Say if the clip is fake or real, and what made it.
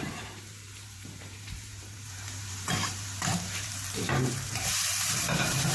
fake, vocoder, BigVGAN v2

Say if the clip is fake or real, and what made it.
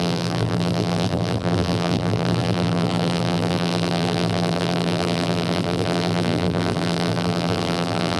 fake, vocoder, BigVGAN v2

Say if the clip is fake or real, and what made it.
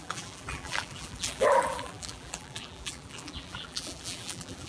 fake, vocoder, BigVGAN v2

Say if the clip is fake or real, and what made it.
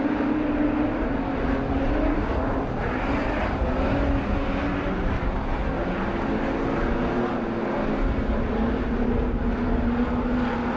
real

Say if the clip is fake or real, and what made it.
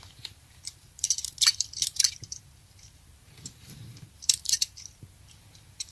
fake, vocoder, BigVGAN v2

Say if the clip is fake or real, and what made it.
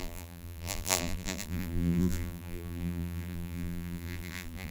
fake, vocoder, BigVGAN v2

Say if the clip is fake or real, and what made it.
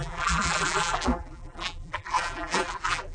fake, vocoder, BigVGAN v2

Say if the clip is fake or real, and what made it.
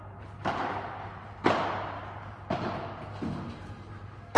real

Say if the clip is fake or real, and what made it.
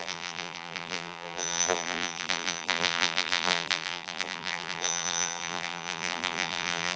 fake, vocoder, BigVGAN v2